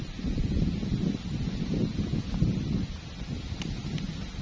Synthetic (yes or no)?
no